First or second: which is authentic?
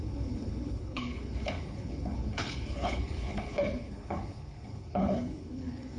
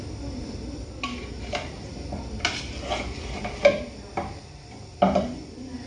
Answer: second